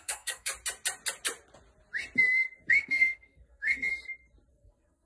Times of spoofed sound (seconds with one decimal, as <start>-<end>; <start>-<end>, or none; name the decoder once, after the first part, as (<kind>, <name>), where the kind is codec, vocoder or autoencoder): 0.0-0.5 (codec, SNAC); 2.7-3.9; 4.5-5.1